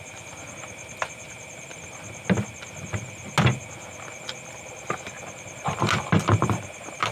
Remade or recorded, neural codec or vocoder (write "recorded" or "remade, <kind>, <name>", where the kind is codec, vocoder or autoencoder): recorded